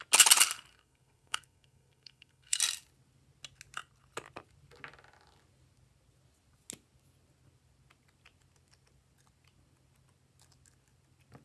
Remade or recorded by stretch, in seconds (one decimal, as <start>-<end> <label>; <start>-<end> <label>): 0.0-0.7 recorded; 0.7-2.6 remade; 2.6-11.4 recorded